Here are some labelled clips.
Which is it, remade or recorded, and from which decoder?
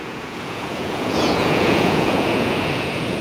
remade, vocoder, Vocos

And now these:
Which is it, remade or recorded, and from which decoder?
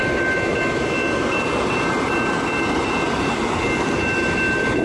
recorded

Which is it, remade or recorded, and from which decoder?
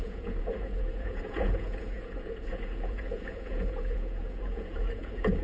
remade, vocoder, Vocos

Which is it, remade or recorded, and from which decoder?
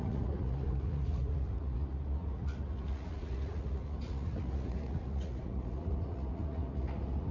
remade, vocoder, Vocos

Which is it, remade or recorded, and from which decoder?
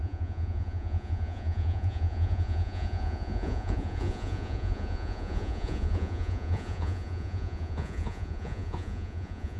remade, vocoder, Vocos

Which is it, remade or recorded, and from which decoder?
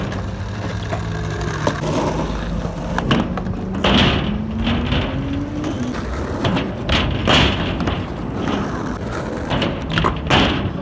recorded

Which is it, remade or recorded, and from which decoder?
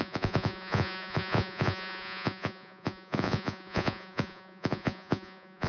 remade, vocoder, Vocos